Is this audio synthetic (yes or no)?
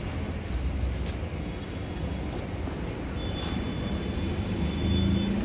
no